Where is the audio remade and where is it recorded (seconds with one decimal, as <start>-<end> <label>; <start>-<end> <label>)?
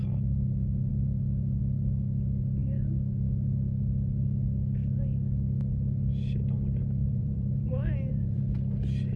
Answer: 0.0-7.0 recorded; 7.0-8.4 remade; 8.4-9.2 recorded